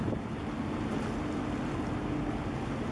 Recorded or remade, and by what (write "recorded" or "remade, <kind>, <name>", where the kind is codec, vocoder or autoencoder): recorded